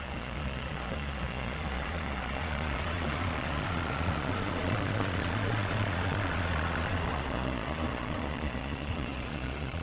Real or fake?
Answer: fake